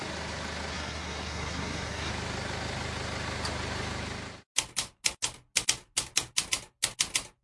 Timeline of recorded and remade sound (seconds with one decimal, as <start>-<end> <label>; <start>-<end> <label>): 0.0-0.7 recorded; 0.7-2.1 remade; 2.1-7.4 recorded

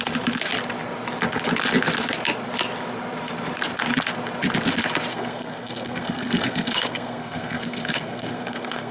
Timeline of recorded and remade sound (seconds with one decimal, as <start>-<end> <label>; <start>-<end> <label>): 0.0-5.1 recorded; 5.1-8.9 remade